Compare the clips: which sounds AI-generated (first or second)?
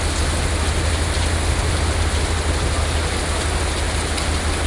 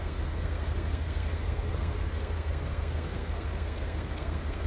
second